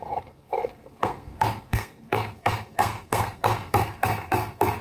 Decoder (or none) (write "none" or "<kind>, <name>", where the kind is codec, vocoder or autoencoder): codec, SNAC